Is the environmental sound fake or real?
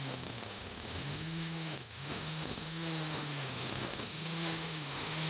fake